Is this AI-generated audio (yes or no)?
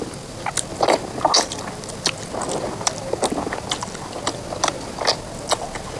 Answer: no